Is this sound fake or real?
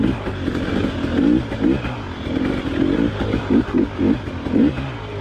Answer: real